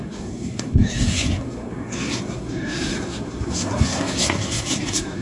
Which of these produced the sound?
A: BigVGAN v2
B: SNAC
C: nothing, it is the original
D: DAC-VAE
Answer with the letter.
B